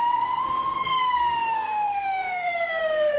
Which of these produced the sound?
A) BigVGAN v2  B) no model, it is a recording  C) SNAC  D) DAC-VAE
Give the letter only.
C